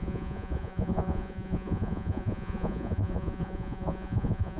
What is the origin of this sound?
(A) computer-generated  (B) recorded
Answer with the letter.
A